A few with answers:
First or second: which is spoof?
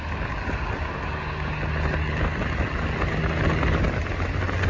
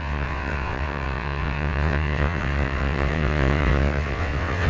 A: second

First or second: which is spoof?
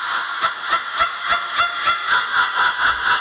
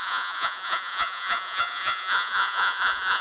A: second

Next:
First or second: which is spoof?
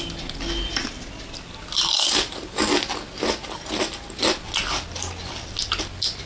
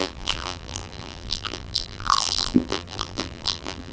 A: second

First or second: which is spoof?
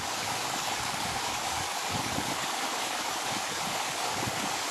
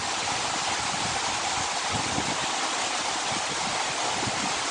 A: first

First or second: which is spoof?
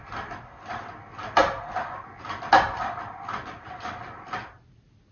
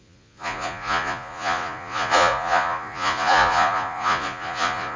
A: second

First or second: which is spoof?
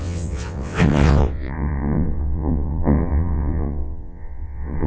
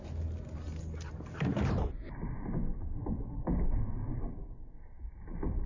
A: first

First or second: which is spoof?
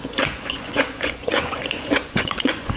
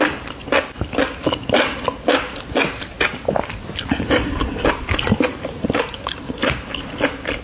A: first